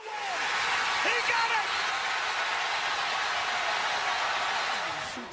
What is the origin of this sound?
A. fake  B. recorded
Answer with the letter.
B